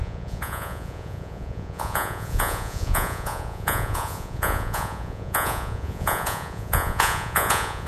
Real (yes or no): no